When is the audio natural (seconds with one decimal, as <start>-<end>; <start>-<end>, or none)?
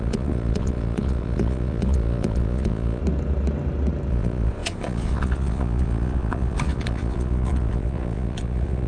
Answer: 3.0-4.1